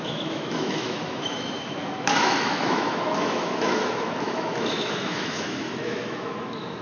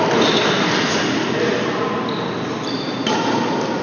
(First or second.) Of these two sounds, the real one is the second